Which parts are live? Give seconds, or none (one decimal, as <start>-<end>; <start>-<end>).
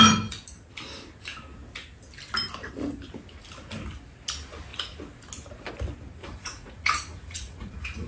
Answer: 0.0-6.2